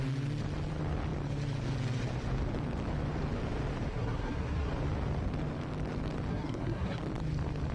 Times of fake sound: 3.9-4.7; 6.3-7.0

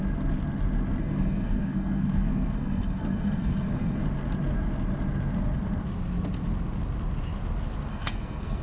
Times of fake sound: 1.0-4.0; 7.9-8.6

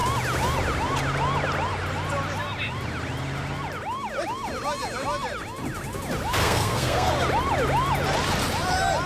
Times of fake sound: 6.4-7.1

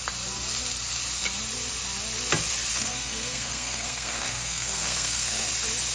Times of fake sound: 2.7-5.5

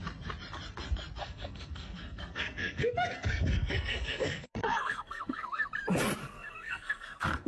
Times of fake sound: 1.2-5.7; 6.2-7.5

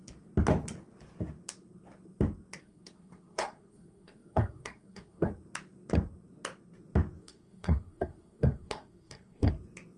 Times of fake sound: 2.6-5.3; 7.2-9.5

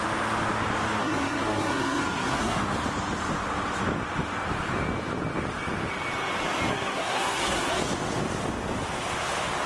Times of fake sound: 1.0-2.6; 6.7-7.7

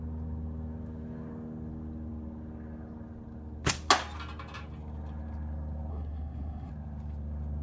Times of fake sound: 5.9-6.7